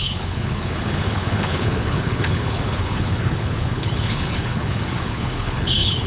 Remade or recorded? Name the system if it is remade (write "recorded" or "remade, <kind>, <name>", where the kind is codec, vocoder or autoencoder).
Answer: remade, codec, HILCodec